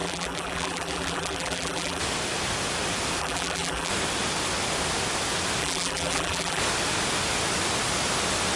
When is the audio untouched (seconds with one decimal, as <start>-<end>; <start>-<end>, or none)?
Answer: 2.0-3.2; 3.9-5.6; 6.6-8.6